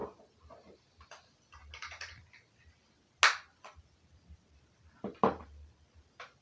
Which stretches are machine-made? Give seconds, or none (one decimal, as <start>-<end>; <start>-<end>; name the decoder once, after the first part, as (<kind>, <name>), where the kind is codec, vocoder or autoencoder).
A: none